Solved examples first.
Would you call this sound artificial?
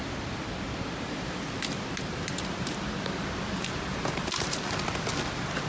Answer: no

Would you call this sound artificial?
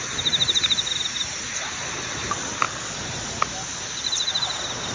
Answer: no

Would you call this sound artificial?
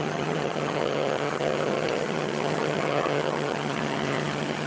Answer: yes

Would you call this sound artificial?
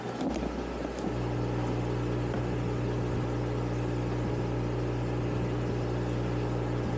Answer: no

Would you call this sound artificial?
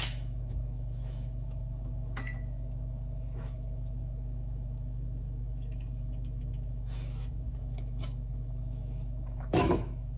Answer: yes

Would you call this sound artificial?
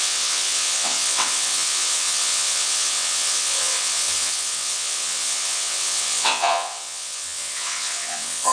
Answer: yes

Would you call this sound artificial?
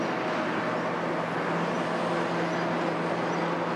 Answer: no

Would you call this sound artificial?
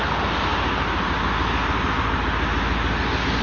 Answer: no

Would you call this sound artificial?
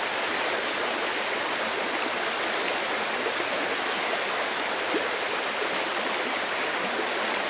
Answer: no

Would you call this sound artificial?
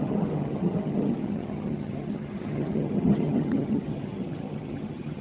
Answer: yes